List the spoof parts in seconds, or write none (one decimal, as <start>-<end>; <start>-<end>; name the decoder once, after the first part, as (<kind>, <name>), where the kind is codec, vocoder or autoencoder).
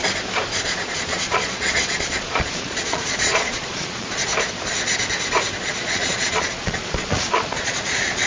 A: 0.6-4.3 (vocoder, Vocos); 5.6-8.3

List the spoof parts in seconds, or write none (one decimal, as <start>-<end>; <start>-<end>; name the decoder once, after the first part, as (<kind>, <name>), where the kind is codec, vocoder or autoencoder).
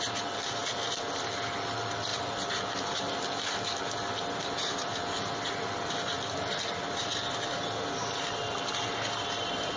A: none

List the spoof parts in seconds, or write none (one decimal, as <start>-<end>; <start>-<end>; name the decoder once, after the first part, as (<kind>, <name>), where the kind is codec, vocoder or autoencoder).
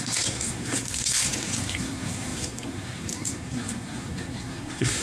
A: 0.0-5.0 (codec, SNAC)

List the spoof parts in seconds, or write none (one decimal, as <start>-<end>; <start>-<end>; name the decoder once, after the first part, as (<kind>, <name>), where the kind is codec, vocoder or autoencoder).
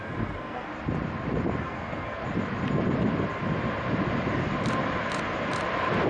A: 0.0-0.7 (codec, SNAC); 1.6-2.2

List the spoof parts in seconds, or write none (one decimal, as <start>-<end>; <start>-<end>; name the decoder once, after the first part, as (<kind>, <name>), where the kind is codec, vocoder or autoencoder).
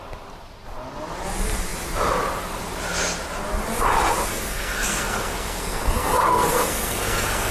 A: 4.3-7.5 (codec, SNAC)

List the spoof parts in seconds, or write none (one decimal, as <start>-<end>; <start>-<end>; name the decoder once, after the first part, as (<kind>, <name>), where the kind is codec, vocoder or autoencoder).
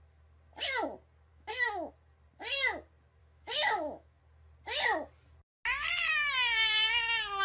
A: 1.3-1.9 (autoencoder, DAC-VAE); 3.2-4.2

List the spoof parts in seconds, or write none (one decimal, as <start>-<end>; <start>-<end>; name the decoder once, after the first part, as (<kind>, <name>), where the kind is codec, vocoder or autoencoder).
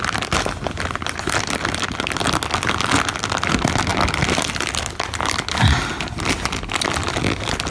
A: none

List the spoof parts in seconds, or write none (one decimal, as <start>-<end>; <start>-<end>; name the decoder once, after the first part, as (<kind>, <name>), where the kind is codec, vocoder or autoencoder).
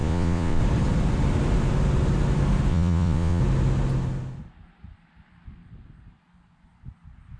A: 0.0-0.6 (vocoder, Vocos); 2.7-3.4